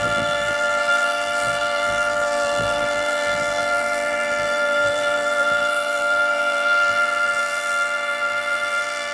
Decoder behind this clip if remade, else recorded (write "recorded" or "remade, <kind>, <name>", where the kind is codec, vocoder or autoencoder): remade, vocoder, BigVGAN v2